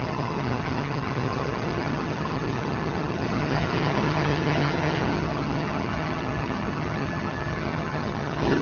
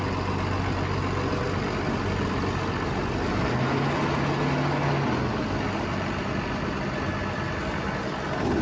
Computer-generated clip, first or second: first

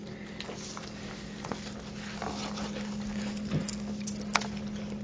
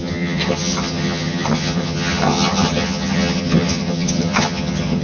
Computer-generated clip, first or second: second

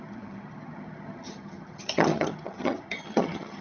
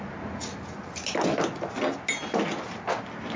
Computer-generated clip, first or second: first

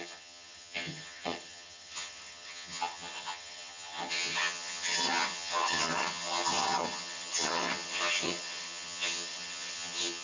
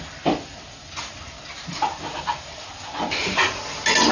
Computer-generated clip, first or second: first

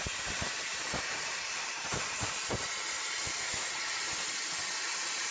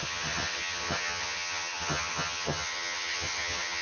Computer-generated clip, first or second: second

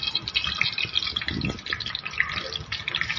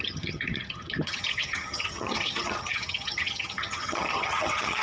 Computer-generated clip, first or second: second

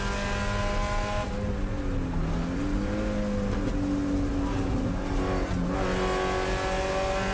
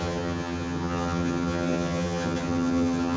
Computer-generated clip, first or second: second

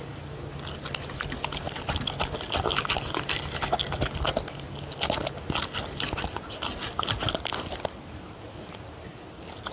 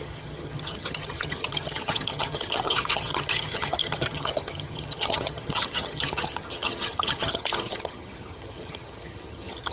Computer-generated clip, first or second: second